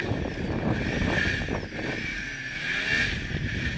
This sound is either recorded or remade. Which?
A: recorded